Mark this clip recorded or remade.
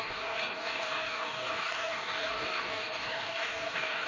remade